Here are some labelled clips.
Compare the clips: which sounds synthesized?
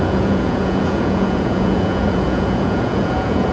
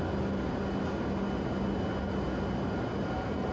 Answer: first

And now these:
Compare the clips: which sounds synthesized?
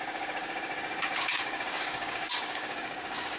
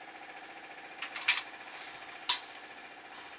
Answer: first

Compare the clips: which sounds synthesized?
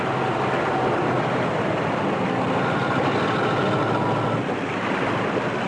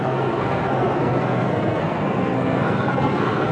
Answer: second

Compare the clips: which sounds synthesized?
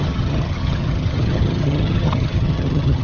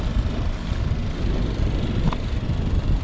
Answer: first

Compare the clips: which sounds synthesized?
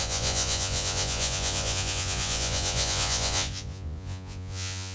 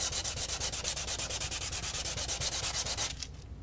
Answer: first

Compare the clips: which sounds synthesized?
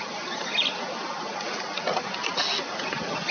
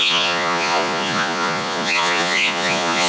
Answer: second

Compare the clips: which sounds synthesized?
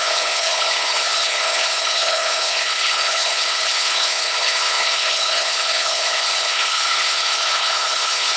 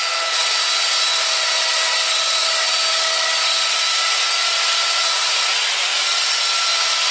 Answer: first